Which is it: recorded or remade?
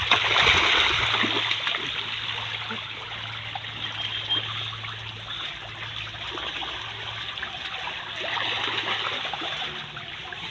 recorded